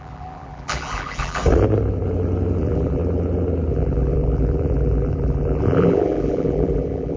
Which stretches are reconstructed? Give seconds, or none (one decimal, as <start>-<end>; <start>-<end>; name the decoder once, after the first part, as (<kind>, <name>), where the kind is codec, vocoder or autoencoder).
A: 0.0-1.4 (vocoder, BigVGAN v2); 2.6-3.0; 3.7-7.2